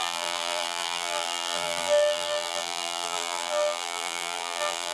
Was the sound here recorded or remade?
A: remade